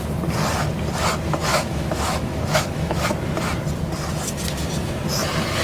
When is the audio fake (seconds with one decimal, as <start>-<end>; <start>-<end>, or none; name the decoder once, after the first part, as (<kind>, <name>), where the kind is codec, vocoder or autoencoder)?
1.5-3.1 (autoencoder, DAC-VAE)